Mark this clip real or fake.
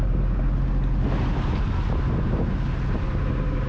real